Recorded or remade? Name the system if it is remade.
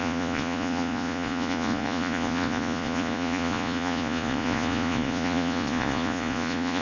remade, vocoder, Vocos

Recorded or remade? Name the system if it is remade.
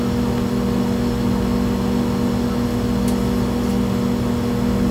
recorded